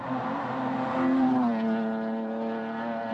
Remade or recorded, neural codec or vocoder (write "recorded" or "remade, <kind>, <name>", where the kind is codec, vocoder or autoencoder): recorded